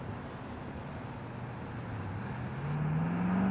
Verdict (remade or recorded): recorded